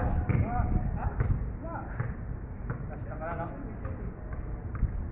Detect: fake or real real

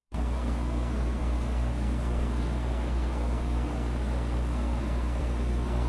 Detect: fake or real fake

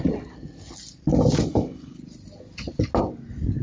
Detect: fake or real real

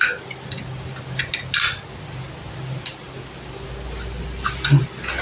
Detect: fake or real real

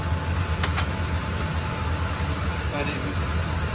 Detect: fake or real real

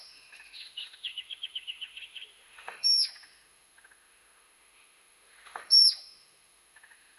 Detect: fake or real fake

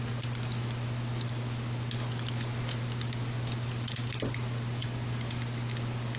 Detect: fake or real real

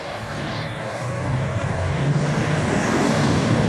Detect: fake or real fake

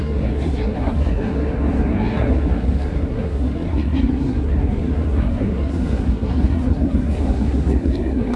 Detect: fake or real fake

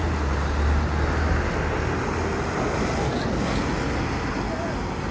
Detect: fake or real real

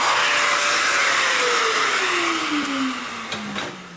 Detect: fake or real real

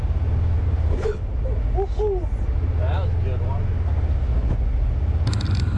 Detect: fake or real real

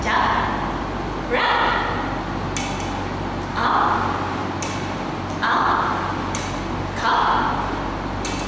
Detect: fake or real real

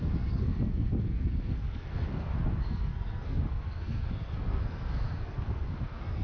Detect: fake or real fake